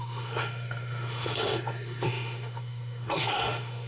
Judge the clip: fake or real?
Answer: fake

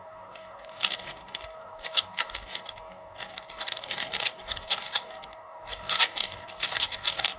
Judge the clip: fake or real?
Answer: fake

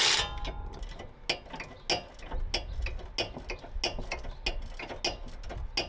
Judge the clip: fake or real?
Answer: real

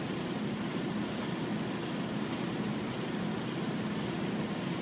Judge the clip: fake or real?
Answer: real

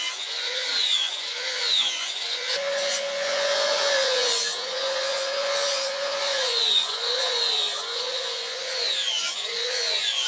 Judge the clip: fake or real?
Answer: fake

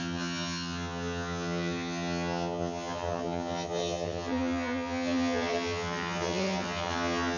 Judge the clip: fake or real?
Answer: fake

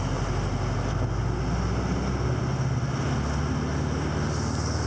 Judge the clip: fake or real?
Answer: real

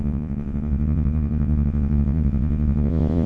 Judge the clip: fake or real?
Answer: fake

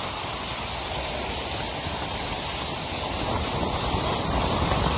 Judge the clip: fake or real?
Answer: real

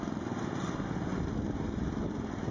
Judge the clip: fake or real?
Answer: real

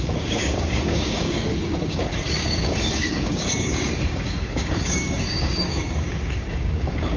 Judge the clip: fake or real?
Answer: fake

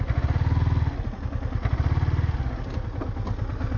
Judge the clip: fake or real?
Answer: real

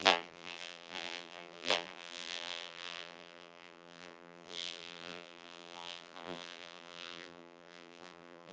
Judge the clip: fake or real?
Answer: fake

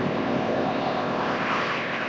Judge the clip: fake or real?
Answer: fake